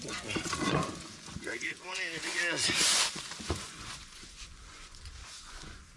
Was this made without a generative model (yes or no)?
no